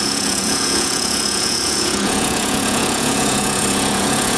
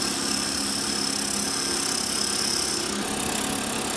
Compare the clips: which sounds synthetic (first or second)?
first